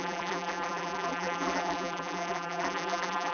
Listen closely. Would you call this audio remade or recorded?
remade